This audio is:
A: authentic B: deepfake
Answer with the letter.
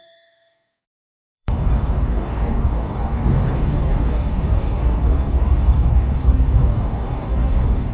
B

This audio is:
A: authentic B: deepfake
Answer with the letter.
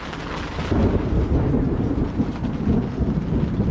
A